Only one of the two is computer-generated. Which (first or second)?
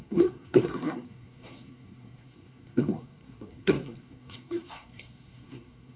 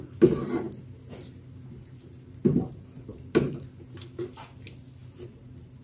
first